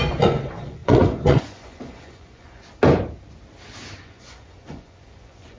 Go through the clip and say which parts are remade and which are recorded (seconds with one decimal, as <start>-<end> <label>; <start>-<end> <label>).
0.0-2.6 remade; 2.6-4.0 recorded; 4.0-5.6 remade